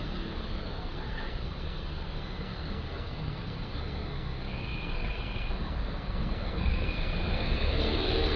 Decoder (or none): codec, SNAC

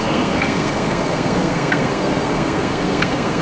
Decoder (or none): codec, SNAC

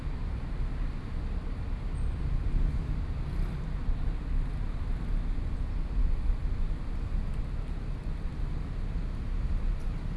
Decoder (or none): none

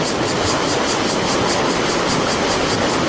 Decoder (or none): none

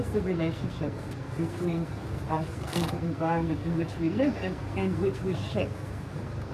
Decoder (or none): codec, SNAC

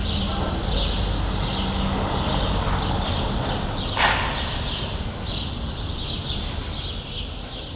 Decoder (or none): none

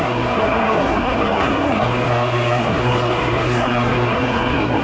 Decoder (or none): codec, SNAC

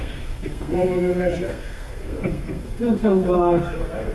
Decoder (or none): codec, SNAC